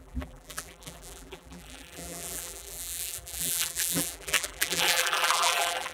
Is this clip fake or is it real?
fake